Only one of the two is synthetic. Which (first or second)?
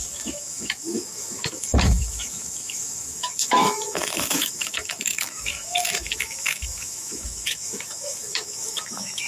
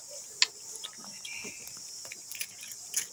first